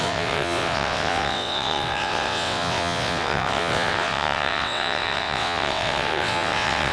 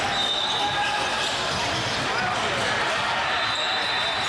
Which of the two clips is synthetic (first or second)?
first